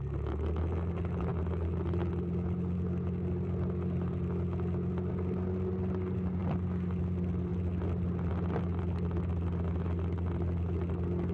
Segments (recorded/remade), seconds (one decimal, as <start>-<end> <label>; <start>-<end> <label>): 0.0-11.3 recorded